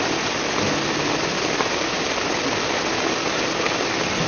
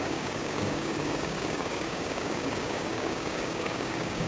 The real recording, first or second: first